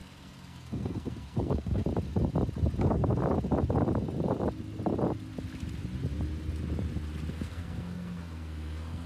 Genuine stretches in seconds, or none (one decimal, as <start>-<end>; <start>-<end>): 1.8-2.8; 3.2-7.3